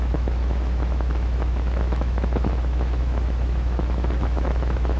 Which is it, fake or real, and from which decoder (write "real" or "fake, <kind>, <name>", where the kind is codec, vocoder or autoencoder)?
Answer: fake, autoencoder, DAC-VAE